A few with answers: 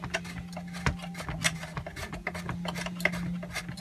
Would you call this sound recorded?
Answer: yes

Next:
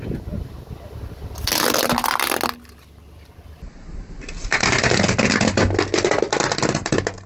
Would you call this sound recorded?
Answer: yes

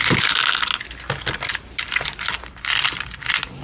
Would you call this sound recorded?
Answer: yes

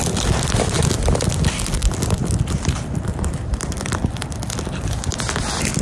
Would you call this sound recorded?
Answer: yes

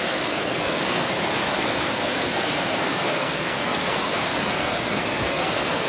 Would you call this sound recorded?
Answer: no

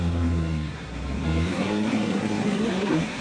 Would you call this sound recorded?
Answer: no